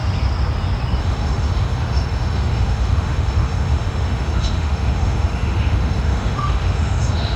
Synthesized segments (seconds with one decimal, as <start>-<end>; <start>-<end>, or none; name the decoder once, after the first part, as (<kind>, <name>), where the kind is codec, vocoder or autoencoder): 1.0-7.4 (autoencoder, DAC-VAE)